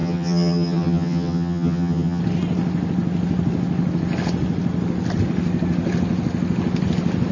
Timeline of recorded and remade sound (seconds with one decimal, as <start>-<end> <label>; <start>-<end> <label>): 0.0-2.2 remade; 2.2-7.3 recorded